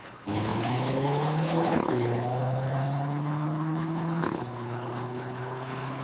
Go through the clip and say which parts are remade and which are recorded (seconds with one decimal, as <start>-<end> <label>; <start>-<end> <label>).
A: 0.0-6.0 remade